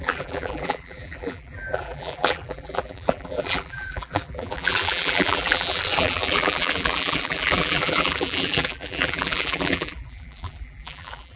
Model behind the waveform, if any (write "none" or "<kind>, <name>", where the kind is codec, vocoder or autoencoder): vocoder, BigVGAN v2